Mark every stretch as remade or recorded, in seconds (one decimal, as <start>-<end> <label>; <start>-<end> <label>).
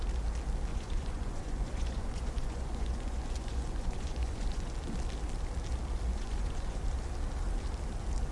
0.0-0.7 recorded; 0.7-4.7 remade; 4.7-6.1 recorded; 6.1-6.8 remade; 6.8-8.3 recorded